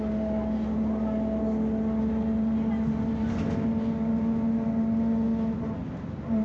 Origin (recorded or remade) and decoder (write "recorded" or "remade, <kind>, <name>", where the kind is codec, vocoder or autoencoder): recorded